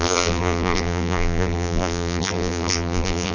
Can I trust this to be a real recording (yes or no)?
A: no